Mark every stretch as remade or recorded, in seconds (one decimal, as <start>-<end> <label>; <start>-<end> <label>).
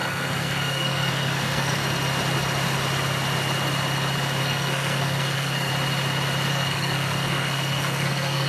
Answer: 0.0-1.8 remade; 1.8-4.4 recorded; 4.4-5.7 remade; 5.7-6.5 recorded; 6.5-8.5 remade